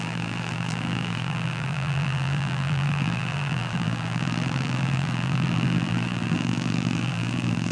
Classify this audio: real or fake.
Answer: fake